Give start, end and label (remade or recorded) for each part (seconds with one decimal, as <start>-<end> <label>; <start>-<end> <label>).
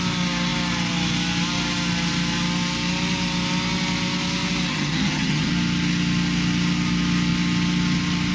0.0-4.7 recorded; 4.7-5.5 remade; 5.5-8.3 recorded